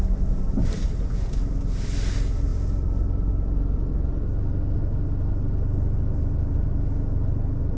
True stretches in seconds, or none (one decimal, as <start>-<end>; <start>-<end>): 0.0-7.8

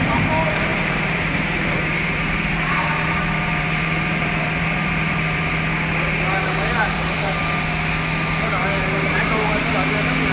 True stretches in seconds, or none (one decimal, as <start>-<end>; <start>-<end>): 0.0-0.7; 5.5-6.8; 7.4-8.6; 9.6-10.3

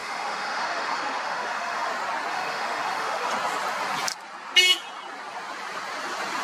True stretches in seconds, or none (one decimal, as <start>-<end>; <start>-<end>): 1.9-2.3; 3.3-6.4

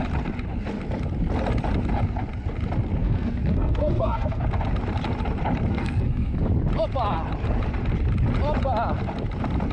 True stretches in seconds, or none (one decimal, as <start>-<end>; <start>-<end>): 0.0-3.0; 4.4-5.7; 6.3-9.7

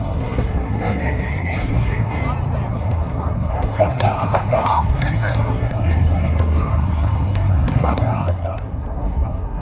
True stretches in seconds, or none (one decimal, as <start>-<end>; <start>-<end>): 2.2-2.7

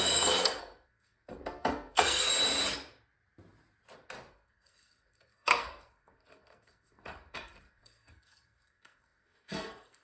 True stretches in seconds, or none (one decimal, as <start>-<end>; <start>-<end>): 2.3-4.3